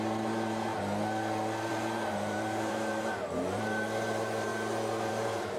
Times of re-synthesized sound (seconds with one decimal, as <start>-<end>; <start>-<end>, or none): 0.0-0.7; 1.7-4.5; 5.1-5.6

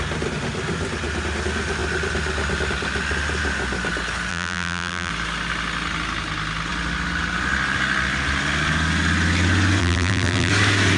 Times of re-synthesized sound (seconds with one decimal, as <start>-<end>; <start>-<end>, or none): 4.3-5.1; 9.8-10.5